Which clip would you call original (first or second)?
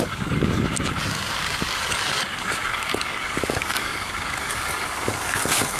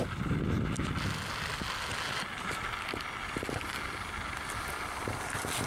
second